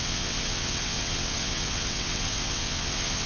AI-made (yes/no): yes